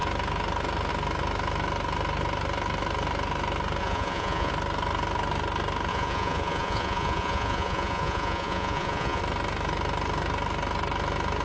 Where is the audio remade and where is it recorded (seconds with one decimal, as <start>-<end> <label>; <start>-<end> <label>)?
0.0-3.8 recorded; 3.8-4.5 remade; 4.5-5.9 recorded; 5.9-9.2 remade; 9.2-11.4 recorded